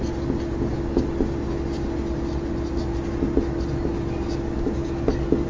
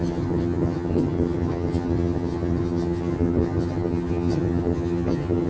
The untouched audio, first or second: first